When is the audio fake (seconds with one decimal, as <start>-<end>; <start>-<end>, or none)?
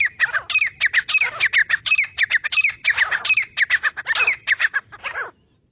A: 1.6-5.0